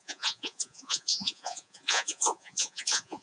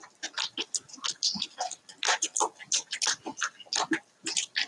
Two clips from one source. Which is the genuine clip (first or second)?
second